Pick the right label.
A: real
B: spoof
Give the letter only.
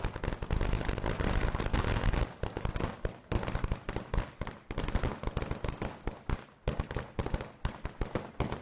A